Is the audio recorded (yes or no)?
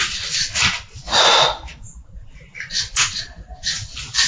yes